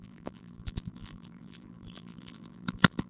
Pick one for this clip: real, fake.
fake